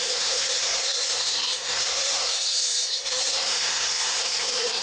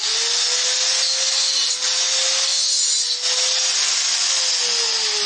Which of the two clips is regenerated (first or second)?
first